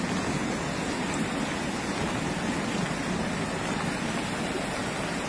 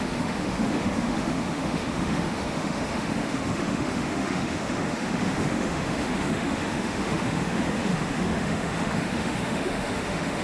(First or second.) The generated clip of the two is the second